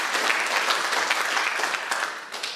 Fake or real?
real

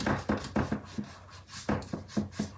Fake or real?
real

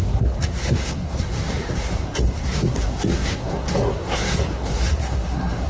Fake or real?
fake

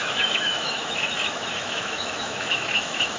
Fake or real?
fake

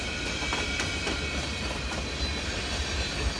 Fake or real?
real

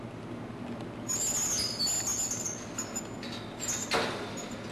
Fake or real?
real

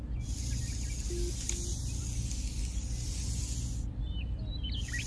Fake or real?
real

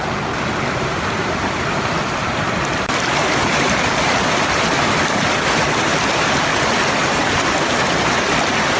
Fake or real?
fake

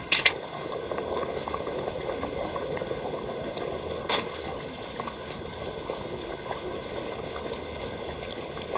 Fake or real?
fake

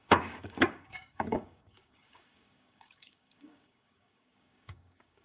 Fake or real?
fake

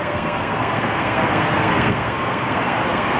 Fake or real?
fake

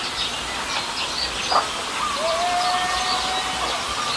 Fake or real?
real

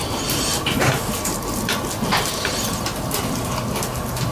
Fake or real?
real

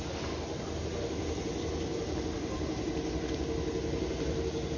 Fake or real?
real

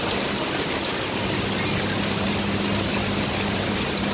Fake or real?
real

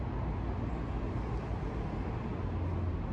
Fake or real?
real